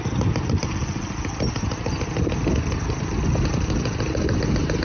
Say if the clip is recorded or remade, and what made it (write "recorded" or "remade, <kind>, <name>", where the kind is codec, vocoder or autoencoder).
recorded